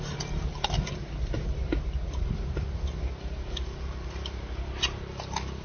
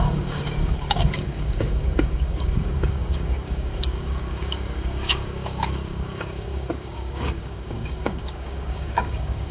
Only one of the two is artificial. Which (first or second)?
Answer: second